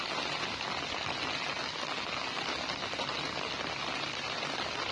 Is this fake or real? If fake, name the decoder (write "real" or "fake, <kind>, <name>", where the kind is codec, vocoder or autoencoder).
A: real